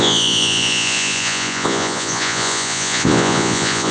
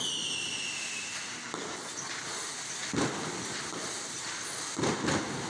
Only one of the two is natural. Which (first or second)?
second